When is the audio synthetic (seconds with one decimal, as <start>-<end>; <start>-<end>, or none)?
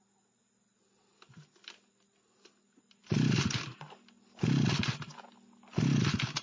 none